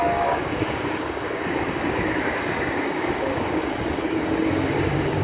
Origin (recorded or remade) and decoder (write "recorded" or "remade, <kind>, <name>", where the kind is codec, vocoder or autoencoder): remade, codec, DAC